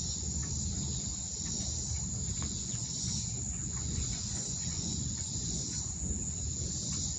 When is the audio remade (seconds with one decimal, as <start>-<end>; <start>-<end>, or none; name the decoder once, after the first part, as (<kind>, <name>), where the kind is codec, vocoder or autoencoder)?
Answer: 0.0-0.4 (vocoder, Vocos); 2.2-7.2